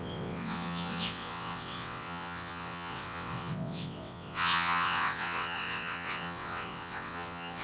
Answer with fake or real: fake